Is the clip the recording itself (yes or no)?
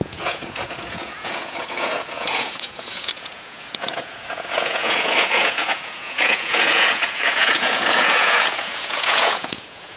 no